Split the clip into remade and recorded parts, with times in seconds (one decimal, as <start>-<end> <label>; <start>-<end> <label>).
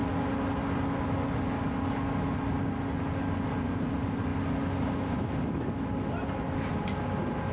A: 0.0-7.5 recorded